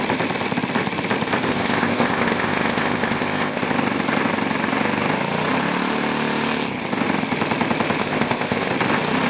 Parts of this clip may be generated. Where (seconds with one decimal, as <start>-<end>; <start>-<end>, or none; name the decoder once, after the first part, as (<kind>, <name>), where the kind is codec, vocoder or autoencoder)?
1.5-3.6 (codec, ZipCodec); 8.0-8.7